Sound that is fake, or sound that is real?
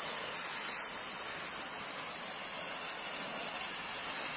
real